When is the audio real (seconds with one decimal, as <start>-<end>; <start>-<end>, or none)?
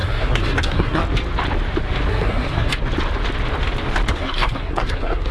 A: 1.0-2.1; 2.7-4.1